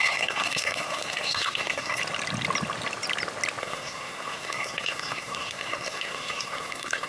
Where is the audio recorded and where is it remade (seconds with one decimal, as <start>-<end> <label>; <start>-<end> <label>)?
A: 0.0-2.0 remade; 2.0-3.6 recorded; 3.6-7.1 remade